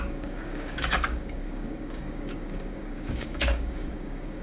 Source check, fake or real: fake